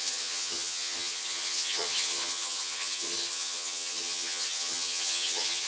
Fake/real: fake